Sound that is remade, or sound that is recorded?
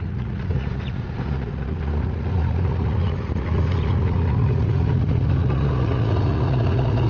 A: remade